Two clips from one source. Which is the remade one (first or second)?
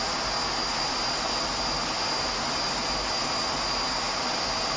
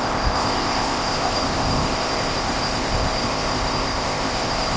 second